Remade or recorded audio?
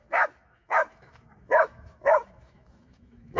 remade